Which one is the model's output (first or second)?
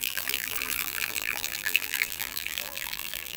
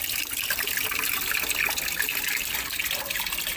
first